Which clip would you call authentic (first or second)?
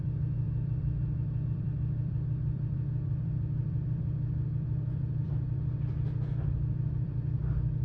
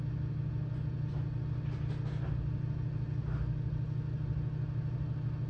second